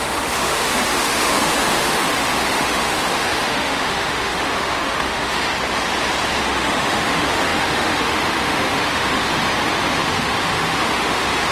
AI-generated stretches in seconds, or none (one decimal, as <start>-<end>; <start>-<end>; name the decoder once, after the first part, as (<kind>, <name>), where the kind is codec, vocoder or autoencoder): 0.0-5.5 (autoencoder, DAC-VAE); 6.4-9.3; 9.9-11.5